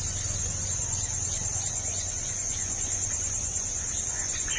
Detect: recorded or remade remade